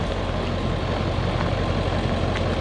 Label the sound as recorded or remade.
recorded